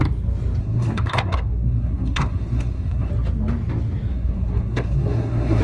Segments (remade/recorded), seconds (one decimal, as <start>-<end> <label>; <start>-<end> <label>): 0.0-0.6 recorded; 0.6-3.1 remade; 3.1-4.1 recorded; 4.1-5.6 remade